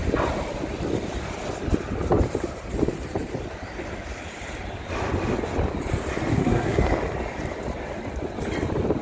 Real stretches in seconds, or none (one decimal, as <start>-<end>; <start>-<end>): 0.0-6.3; 6.8-9.0